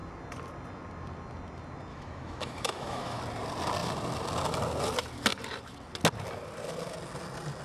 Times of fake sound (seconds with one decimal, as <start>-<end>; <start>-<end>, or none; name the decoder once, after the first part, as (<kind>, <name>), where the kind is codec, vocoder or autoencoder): 1.9-3.2 (autoencoder, DAC-VAE)